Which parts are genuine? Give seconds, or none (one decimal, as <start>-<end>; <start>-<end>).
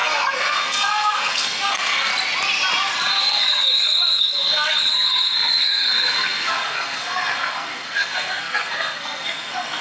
2.1-3.2